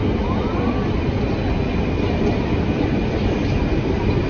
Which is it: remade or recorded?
recorded